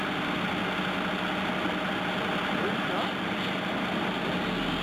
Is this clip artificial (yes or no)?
no